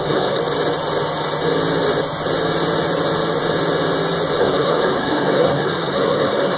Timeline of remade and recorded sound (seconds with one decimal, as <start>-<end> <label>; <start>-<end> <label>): 0.0-0.4 remade; 0.4-4.4 recorded; 4.4-6.6 remade